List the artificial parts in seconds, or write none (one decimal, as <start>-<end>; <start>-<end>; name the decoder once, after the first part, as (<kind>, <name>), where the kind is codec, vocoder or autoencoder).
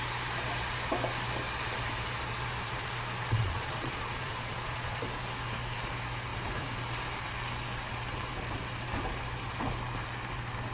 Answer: 3.3-5.0 (vocoder, Vocos)